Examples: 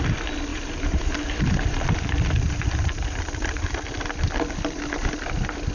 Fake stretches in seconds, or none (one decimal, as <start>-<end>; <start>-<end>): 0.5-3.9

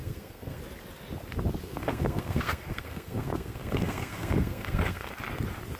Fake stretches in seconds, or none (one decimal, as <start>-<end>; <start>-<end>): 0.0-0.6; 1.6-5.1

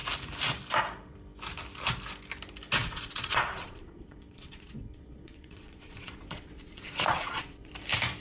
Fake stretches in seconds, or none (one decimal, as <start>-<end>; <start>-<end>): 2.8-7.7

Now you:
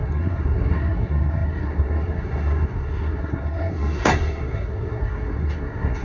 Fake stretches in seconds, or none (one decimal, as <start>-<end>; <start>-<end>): 0.0-6.0